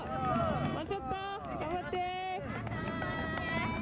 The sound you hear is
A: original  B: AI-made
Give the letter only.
A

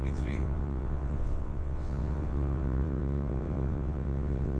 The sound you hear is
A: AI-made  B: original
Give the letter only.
A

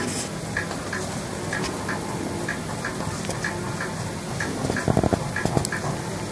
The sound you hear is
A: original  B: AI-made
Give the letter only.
A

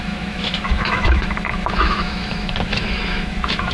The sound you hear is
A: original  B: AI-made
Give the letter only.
B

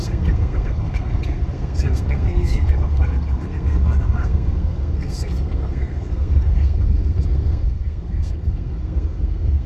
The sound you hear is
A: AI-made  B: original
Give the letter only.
A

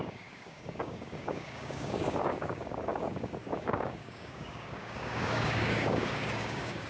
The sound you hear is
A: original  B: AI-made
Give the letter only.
B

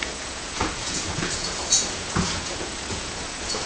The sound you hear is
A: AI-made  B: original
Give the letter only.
A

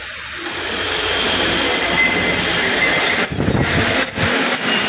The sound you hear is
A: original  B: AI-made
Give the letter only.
A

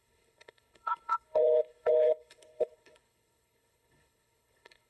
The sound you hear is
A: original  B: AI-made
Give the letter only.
B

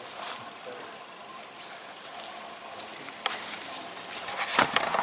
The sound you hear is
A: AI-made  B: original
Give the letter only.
A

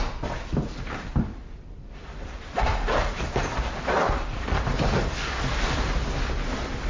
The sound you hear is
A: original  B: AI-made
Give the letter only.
B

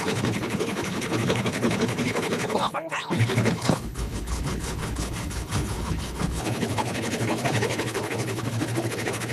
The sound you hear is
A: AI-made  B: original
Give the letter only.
A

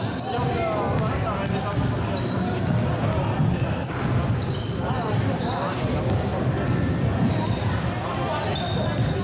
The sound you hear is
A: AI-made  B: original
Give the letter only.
B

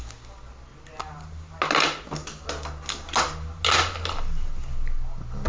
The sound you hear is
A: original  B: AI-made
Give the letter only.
A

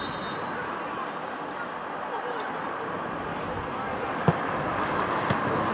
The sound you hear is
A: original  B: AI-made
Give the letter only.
A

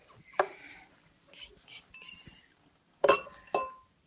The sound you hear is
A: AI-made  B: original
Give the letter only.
B